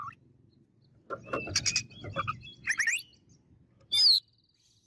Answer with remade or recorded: recorded